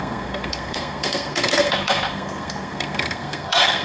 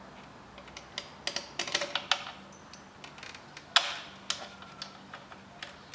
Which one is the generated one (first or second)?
first